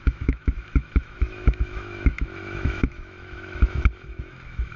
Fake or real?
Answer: fake